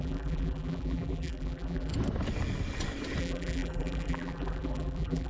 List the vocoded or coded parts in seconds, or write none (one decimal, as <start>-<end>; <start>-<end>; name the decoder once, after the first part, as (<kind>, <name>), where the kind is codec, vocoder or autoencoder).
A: 0.0-1.9 (vocoder, BigVGAN v2); 3.2-5.3